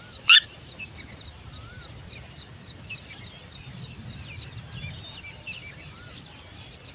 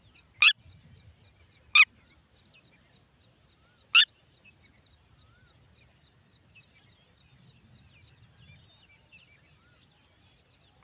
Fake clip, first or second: first